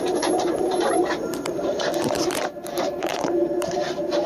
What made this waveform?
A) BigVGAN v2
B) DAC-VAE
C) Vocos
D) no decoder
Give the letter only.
A